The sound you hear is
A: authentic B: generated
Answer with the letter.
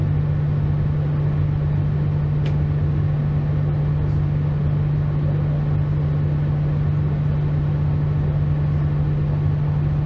A